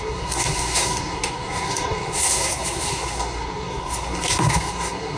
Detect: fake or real fake